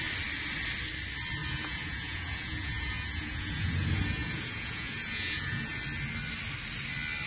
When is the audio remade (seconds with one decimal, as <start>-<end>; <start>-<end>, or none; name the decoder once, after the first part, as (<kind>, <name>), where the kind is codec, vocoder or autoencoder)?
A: 1.4-5.8 (vocoder, Vocos)